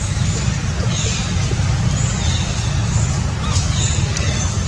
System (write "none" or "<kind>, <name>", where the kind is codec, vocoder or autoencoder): none